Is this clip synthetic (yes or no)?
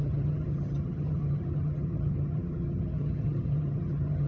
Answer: yes